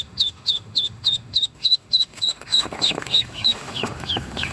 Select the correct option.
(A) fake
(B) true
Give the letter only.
A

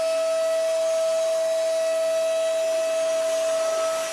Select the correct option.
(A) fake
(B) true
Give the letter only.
B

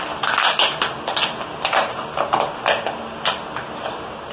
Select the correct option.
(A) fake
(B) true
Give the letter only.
B